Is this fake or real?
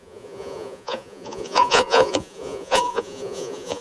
fake